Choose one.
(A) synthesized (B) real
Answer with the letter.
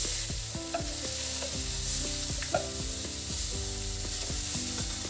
B